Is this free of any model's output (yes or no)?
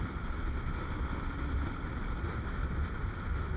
yes